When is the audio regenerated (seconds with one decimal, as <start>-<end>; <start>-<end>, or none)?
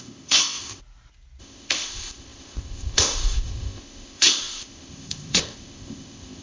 0.0-0.8; 1.4-6.4